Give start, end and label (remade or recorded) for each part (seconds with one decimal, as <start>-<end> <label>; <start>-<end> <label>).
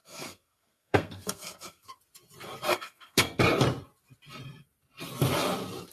0.0-2.0 remade; 2.0-2.7 recorded; 2.7-3.4 remade; 3.4-5.9 recorded